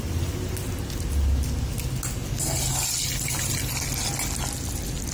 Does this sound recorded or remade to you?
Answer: recorded